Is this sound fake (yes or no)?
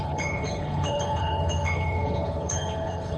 yes